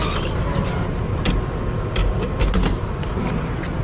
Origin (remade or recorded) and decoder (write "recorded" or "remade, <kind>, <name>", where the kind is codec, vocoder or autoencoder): recorded